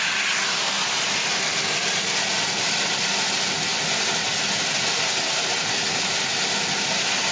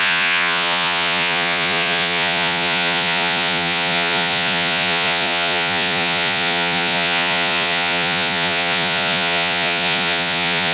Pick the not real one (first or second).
second